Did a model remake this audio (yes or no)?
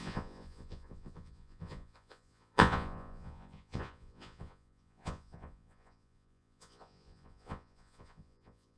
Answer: yes